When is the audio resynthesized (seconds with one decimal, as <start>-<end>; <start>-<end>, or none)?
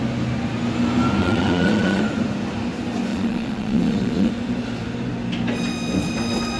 1.2-2.0; 3.1-4.3